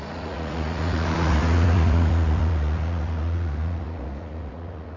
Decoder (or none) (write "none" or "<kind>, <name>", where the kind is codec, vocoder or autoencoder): vocoder, Vocos